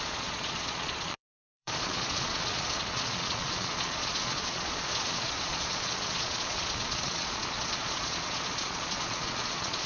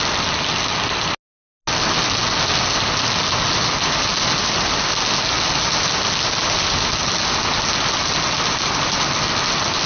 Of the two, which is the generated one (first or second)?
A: first